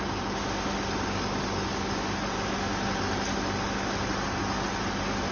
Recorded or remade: recorded